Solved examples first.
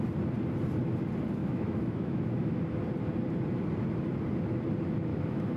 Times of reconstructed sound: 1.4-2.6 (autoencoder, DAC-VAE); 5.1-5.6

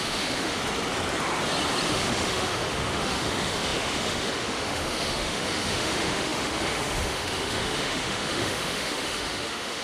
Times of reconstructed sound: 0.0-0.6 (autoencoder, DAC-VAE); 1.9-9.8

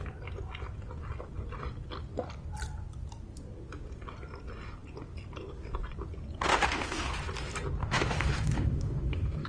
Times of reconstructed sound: 6.5-7.1 (autoencoder, DAC-VAE); 7.8-9.5

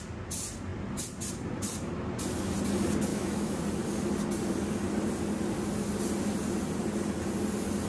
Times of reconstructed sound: 3.1-3.6 (autoencoder, DAC-VAE)

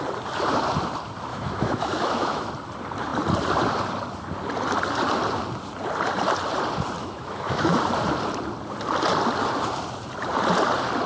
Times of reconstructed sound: 1.3-2.5 (autoencoder, DAC-VAE); 7.0-7.8

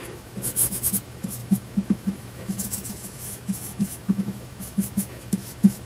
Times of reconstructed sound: 0.0-5.9 (autoencoder, DAC-VAE)